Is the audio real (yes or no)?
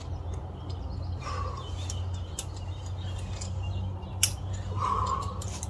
yes